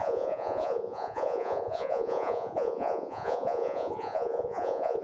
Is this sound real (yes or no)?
no